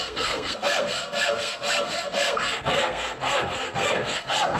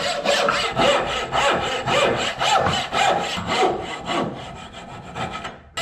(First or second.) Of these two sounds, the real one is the second